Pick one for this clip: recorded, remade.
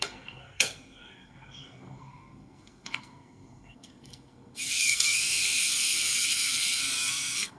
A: remade